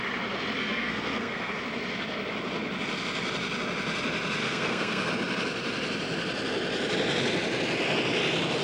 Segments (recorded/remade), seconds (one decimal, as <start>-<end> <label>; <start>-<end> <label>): 0.0-0.6 recorded; 0.6-1.5 remade; 1.5-4.4 recorded; 4.4-5.1 remade; 5.1-8.6 recorded